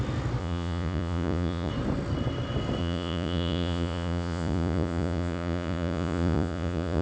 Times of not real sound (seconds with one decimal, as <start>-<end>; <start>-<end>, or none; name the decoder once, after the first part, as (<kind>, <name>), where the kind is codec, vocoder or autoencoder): 0.4-1.7 (vocoder, Vocos); 2.8-7.0